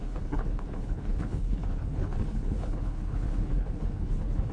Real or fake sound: fake